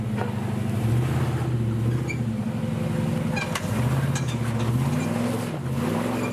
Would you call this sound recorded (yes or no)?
yes